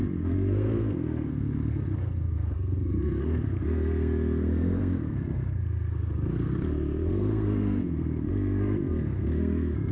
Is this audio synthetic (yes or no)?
yes